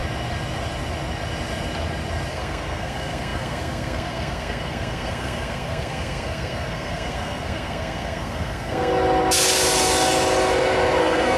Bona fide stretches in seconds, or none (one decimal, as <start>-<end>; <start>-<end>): 0.0-2.3; 8.9-11.0